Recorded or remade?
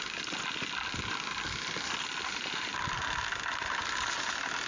recorded